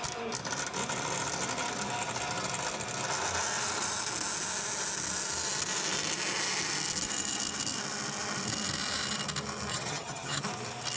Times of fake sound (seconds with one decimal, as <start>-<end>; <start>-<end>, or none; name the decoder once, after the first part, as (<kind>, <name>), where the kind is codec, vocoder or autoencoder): 9.7-10.4 (vocoder, HiFi-GAN)